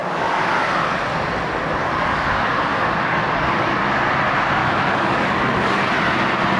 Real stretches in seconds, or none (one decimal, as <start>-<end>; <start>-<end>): 0.5-1.8; 3.8-4.6; 5.9-6.6